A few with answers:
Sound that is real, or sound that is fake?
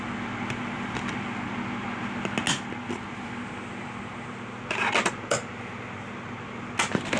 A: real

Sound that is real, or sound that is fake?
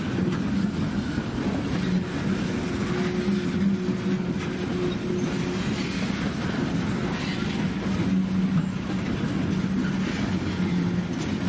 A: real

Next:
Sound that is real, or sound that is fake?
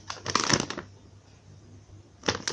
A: real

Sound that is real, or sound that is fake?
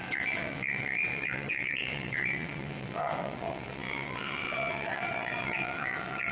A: fake